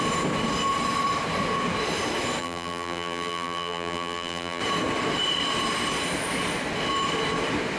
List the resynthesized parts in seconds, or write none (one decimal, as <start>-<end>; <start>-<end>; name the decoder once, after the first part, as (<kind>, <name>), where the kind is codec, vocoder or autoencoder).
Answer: 2.4-4.6 (vocoder, BigVGAN v2)